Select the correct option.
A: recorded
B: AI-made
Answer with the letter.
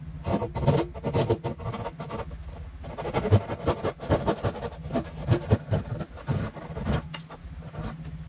A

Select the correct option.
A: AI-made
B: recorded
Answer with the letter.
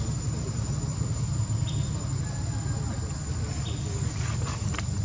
B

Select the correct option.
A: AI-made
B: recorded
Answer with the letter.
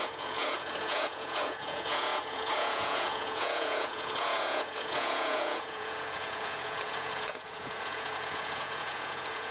A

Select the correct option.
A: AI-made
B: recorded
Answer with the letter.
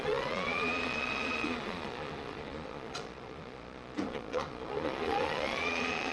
A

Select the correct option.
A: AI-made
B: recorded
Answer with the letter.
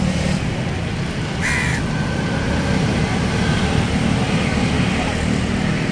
B